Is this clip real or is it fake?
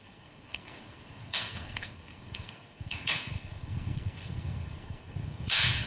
fake